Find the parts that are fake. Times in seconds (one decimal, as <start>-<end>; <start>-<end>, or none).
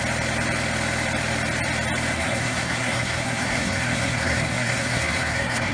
2.1-5.7